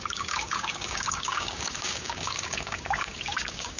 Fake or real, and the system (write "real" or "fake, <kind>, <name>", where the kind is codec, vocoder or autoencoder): fake, codec, DAC